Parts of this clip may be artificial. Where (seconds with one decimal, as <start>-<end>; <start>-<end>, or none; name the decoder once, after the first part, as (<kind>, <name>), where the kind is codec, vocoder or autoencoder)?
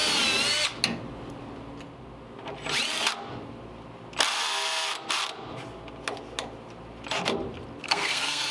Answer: 7.8-8.5 (codec, SNAC)